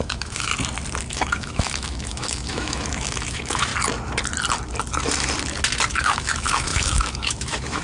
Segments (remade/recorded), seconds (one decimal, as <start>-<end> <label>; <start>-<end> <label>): 0.0-0.5 remade; 0.5-1.1 recorded; 1.1-3.7 remade; 3.7-5.9 recorded; 5.9-7.8 remade